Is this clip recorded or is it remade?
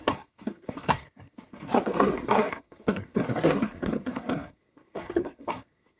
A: remade